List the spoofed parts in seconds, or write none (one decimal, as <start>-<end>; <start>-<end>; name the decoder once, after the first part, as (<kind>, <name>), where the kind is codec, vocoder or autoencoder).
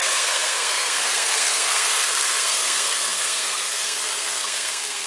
0.0-5.1 (codec, SNAC)